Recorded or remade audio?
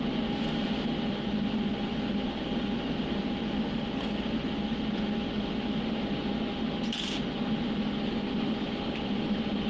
recorded